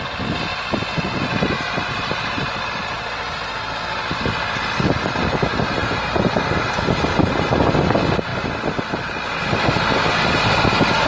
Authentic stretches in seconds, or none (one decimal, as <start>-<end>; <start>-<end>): 0.0-0.5; 3.7-5.8; 7.1-11.1